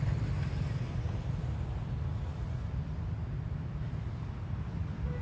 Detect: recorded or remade recorded